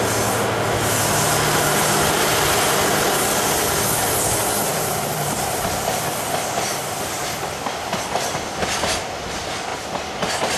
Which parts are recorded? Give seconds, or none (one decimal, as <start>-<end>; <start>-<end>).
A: 0.0-4.7; 8.1-10.6